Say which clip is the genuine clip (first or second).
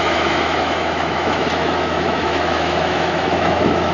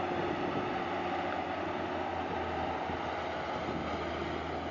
second